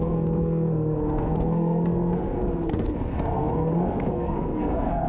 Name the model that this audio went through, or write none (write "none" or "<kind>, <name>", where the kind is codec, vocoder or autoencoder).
codec, SNAC